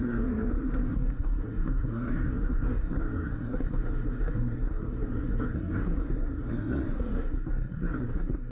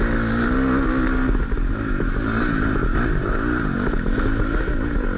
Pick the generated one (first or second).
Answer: first